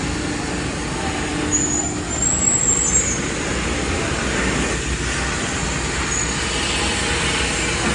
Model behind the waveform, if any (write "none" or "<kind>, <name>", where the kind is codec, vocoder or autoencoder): none